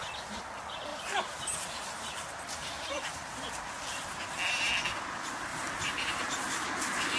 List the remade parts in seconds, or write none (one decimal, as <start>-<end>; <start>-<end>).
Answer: 0.9-3.7; 5.5-7.2